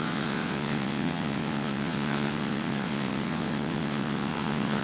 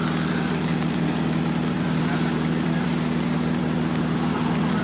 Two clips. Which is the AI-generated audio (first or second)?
first